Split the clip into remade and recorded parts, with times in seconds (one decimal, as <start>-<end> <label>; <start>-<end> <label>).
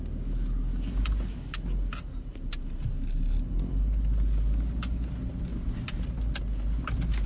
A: 0.0-7.3 recorded